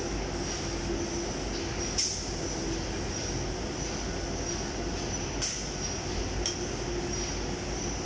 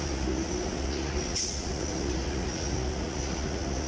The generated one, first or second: second